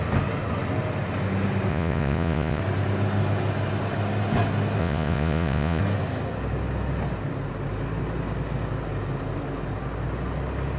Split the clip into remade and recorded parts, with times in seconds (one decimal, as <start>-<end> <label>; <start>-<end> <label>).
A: 0.0-1.7 recorded; 1.7-2.6 remade; 2.6-4.8 recorded; 4.8-5.8 remade; 5.8-10.8 recorded